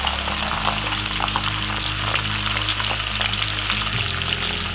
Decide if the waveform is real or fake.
real